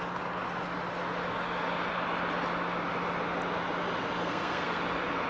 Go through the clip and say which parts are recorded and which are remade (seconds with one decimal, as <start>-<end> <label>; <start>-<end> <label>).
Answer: 0.0-4.2 recorded; 4.2-4.8 remade; 4.8-5.3 recorded